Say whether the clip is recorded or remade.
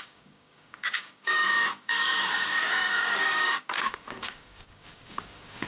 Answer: remade